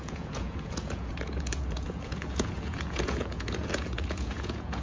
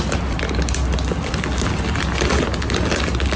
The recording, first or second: second